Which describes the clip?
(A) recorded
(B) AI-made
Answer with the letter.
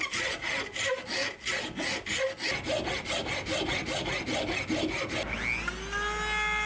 A